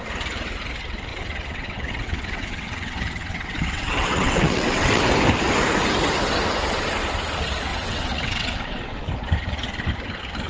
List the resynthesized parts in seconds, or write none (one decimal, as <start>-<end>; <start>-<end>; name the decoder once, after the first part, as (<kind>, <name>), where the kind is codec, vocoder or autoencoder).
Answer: 1.1-5.0 (vocoder, WaveNeXt); 7.7-9.0